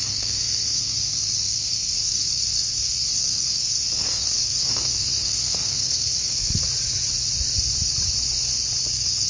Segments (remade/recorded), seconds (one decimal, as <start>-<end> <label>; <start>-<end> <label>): 0.0-6.6 remade; 6.6-8.9 recorded; 8.9-9.3 remade